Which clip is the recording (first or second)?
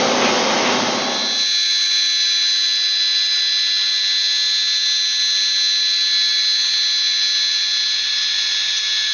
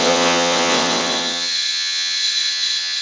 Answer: first